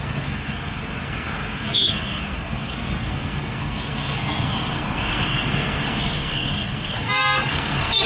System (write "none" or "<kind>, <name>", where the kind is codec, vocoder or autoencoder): codec, SNAC